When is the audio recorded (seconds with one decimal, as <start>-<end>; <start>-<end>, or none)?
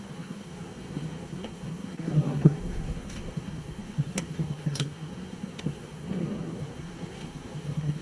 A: none